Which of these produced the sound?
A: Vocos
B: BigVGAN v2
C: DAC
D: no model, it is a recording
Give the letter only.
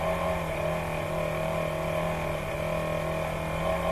D